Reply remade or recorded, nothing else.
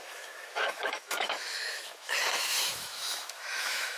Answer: remade